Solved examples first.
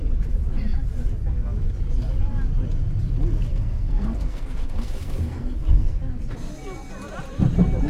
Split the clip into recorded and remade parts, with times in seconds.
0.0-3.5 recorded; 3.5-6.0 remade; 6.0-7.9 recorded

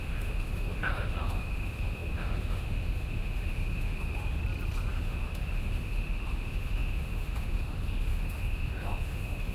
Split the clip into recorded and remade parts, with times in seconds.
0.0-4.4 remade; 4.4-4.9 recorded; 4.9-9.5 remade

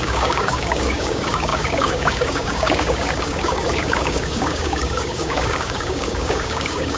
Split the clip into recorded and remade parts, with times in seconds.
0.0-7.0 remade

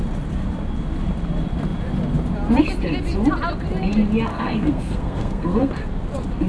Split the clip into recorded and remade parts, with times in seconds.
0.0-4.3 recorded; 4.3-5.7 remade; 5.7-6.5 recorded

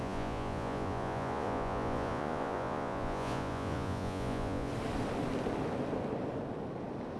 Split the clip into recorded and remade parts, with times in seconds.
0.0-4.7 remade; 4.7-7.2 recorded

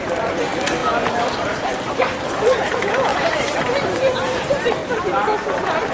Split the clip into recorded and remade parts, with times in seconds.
0.0-0.8 remade; 0.8-1.4 recorded; 1.4-4.8 remade; 4.8-5.9 recorded